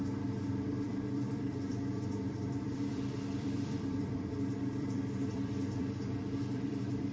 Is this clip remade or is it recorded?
remade